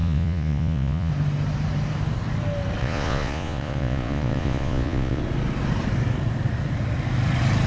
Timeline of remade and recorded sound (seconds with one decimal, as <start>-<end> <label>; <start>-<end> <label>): 0.0-1.1 remade; 1.1-2.8 recorded; 2.8-5.2 remade; 5.2-7.7 recorded